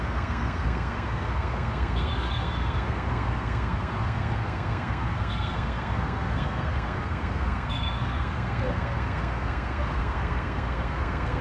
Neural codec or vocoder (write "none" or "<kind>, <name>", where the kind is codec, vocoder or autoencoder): codec, SNAC